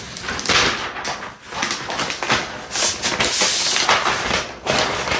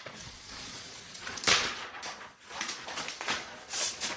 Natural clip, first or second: first